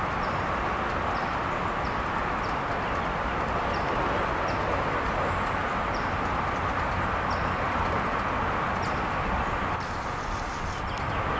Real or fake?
real